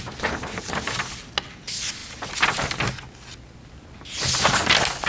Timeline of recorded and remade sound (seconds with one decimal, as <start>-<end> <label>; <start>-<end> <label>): 0.0-5.1 recorded